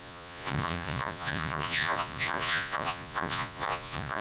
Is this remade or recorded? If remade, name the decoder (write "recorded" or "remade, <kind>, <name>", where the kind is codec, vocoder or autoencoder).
remade, vocoder, Vocos